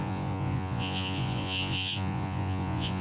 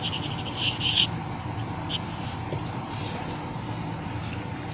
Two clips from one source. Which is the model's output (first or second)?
first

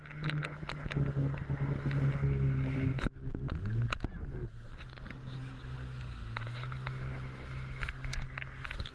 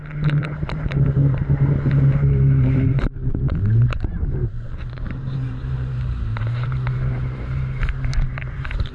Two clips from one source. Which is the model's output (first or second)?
second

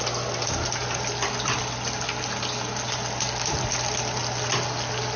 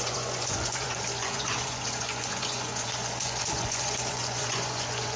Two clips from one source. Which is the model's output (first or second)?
second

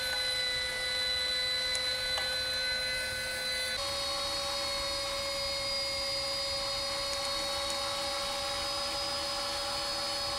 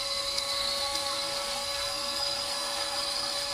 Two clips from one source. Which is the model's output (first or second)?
second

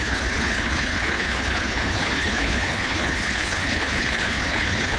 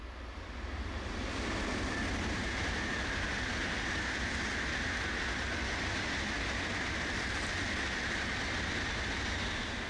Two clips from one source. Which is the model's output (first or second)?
first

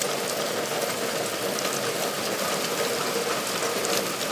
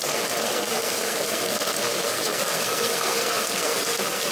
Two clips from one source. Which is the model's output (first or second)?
second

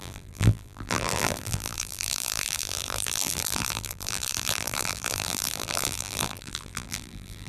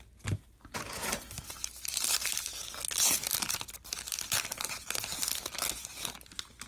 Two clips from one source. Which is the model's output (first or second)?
first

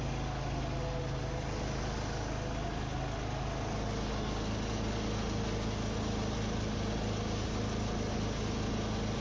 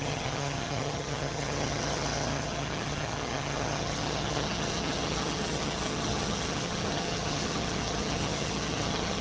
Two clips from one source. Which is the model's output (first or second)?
second